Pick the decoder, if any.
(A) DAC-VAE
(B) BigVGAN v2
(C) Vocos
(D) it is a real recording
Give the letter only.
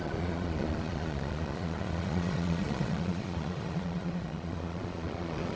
C